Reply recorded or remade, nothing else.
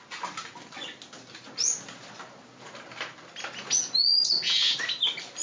recorded